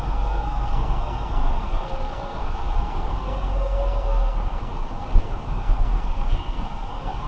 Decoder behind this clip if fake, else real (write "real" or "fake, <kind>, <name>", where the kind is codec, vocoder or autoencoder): fake, codec, SNAC